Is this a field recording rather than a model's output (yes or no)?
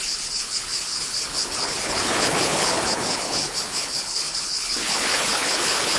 no